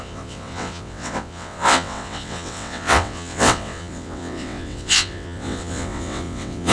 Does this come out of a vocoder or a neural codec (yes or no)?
yes